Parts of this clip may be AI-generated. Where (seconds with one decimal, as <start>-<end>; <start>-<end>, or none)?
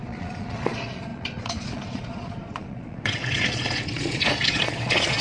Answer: 0.0-5.2